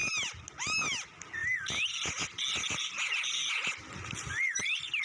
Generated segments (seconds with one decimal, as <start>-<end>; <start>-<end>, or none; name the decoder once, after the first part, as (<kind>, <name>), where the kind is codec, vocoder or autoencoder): none